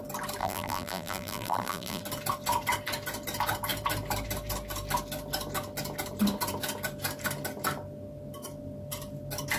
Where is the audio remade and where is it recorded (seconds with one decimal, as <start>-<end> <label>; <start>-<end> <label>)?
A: 0.0-0.4 recorded; 0.4-2.0 remade; 2.0-9.6 recorded